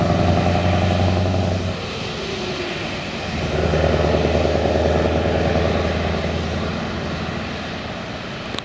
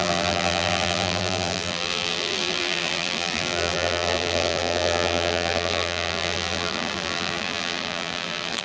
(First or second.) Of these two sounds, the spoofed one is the second